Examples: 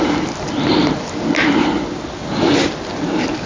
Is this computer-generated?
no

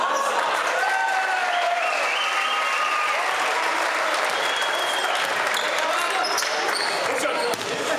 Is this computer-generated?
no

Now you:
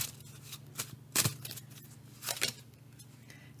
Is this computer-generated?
no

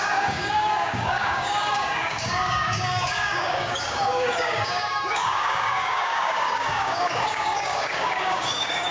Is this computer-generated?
yes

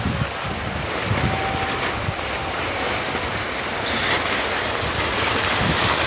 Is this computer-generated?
no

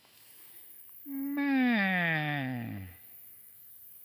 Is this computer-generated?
yes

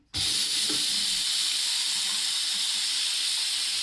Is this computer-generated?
no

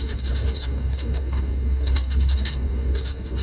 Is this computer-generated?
yes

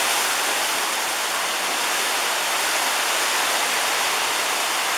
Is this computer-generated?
no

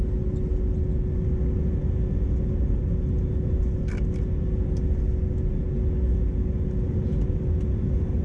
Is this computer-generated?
no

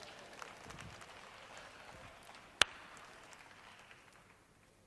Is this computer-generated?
no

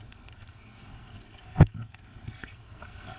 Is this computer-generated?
yes